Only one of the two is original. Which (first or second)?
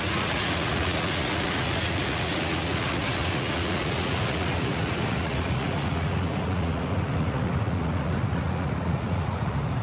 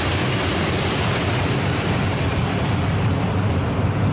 second